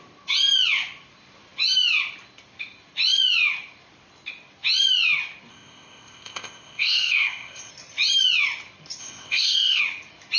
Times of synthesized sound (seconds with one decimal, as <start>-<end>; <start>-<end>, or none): 5.5-7.7; 9.0-9.8